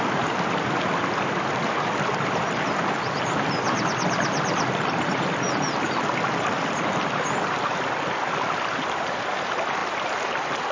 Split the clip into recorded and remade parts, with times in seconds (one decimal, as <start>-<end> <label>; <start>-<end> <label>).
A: 0.0-10.7 recorded